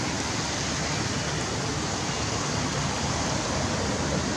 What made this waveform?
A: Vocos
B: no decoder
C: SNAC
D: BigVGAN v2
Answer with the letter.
B